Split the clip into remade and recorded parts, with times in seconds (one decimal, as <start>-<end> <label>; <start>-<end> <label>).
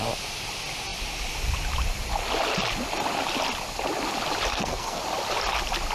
0.0-4.5 recorded; 4.5-5.0 remade; 5.0-5.9 recorded